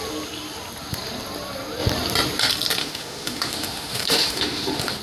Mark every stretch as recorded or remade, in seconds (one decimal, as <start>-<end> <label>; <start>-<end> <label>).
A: 0.0-2.8 recorded; 2.8-5.0 remade